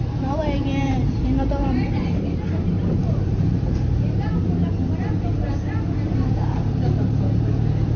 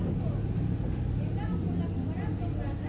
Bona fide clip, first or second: second